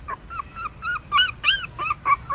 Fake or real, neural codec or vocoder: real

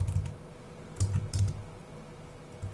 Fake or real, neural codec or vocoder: real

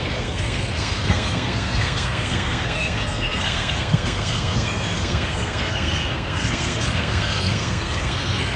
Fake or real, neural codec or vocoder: fake, codec, SNAC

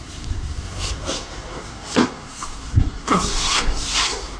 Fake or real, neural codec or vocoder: fake, codec, SNAC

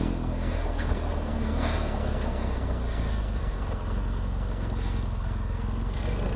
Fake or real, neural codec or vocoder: fake, codec, SNAC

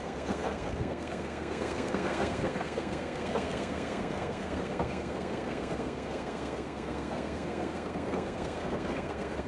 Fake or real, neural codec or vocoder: fake, codec, SNAC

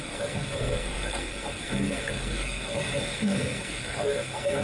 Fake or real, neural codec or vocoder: fake, codec, SNAC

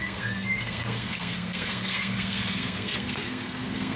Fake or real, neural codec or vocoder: fake, codec, SNAC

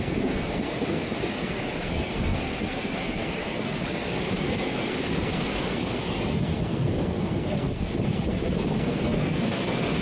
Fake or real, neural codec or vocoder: fake, codec, SNAC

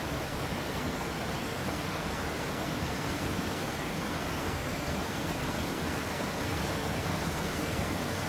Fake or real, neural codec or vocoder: fake, codec, SNAC